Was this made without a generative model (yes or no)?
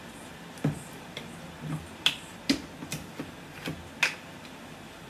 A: yes